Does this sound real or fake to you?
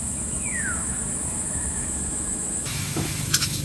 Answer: fake